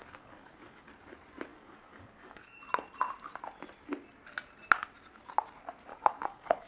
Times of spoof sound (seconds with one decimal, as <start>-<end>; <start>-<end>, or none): 0.0-0.9; 1.5-2.6; 5.9-6.7